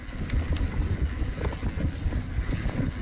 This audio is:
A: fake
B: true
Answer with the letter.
B